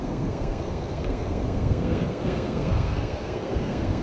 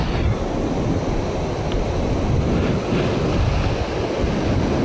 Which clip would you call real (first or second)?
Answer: second